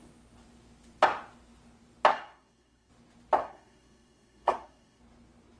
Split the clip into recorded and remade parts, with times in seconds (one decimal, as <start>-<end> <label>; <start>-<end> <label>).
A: 0.0-2.1 recorded; 2.1-2.9 remade; 2.9-3.4 recorded; 3.4-5.0 remade; 5.0-5.6 recorded